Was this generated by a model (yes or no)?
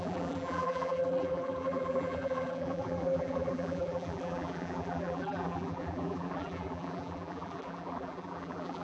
yes